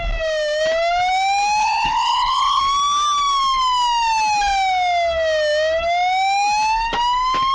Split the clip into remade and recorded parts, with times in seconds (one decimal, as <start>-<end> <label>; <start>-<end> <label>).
0.0-1.6 recorded; 1.6-2.6 remade; 2.6-7.5 recorded